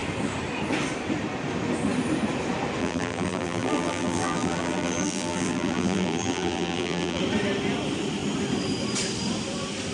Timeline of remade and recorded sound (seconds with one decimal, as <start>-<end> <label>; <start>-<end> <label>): 0.0-2.8 recorded; 2.8-7.2 remade; 7.2-9.9 recorded